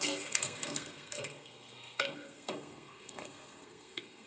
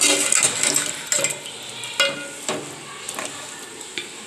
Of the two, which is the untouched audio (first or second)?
second